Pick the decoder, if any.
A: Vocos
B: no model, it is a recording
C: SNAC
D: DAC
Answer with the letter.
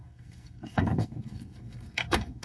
C